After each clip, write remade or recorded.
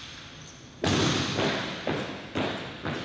recorded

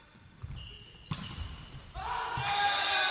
recorded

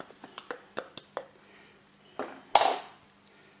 recorded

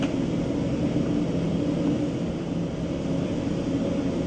recorded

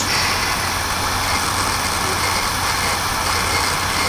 recorded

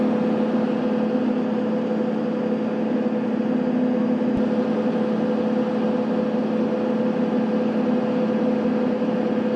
recorded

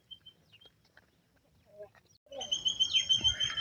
recorded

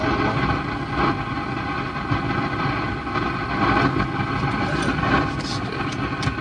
recorded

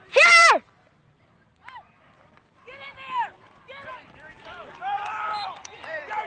remade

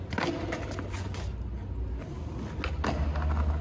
recorded